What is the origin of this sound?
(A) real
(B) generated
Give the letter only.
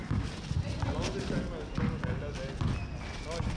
A